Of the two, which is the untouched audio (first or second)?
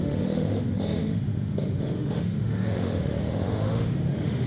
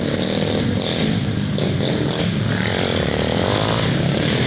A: second